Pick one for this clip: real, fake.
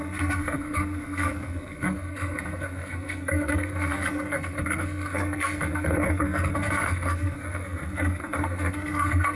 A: fake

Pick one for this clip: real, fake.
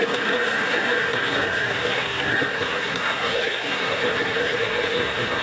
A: fake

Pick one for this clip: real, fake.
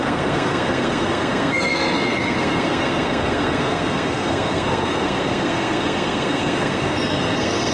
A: fake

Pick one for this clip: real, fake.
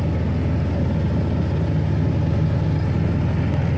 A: real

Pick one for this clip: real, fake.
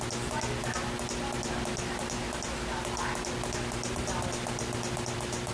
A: real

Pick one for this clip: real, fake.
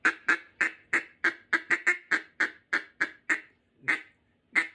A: real